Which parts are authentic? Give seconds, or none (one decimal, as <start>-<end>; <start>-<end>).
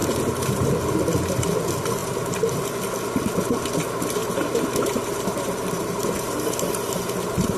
0.7-2.0; 2.6-4.2